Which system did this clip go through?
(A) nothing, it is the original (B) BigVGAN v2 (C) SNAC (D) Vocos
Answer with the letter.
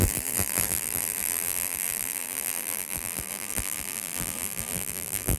B